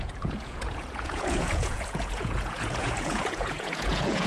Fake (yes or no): yes